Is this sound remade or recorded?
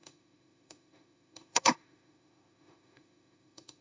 remade